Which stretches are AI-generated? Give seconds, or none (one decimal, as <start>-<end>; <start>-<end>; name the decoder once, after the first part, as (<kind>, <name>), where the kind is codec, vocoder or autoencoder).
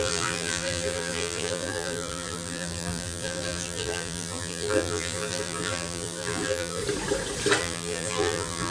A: 0.0-6.8 (vocoder, BigVGAN v2); 7.6-8.7